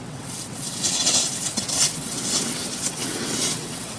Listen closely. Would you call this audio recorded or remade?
remade